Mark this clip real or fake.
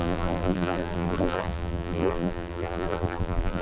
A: fake